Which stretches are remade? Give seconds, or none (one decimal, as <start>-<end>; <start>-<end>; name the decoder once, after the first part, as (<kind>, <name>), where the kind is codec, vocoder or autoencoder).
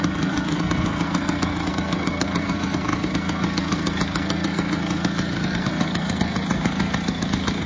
0.0-7.7 (codec, SNAC)